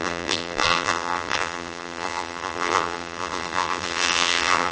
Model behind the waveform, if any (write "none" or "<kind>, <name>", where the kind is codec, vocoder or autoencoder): vocoder, BigVGAN v2